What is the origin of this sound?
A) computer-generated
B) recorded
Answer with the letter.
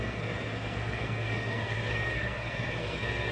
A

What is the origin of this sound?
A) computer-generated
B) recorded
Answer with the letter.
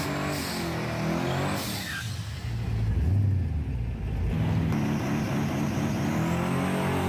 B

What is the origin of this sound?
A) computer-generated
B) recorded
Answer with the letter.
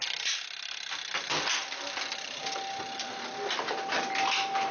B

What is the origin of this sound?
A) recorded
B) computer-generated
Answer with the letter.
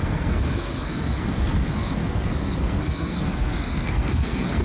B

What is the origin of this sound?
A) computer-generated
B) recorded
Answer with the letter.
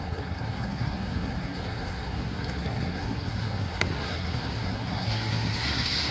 A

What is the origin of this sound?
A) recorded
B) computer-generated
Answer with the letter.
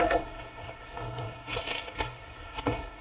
B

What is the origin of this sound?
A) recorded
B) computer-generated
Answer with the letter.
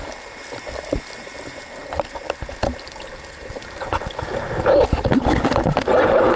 A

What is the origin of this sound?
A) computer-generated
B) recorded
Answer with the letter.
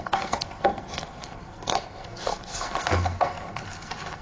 A